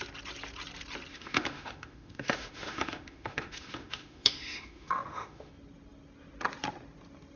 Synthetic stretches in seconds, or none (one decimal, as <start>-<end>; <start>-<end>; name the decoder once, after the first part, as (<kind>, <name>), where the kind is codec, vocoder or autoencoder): 1.1-5.5 (autoencoder, DAC-VAE)